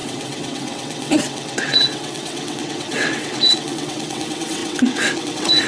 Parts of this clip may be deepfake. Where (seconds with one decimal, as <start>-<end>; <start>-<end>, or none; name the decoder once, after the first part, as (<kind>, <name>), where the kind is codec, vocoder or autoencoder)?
0.0-5.7 (vocoder, WaveNeXt)